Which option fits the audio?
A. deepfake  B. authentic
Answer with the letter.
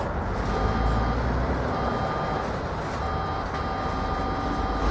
B